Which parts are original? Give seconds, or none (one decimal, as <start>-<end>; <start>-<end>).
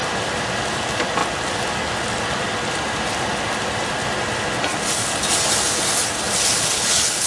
0.0-6.5